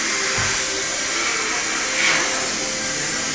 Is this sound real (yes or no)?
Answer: yes